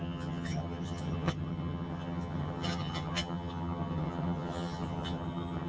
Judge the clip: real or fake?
fake